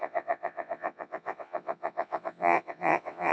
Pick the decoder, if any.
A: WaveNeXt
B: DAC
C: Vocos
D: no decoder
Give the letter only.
A